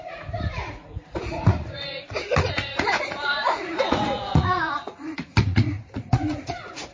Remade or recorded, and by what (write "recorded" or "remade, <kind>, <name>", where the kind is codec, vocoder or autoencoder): remade, vocoder, Vocos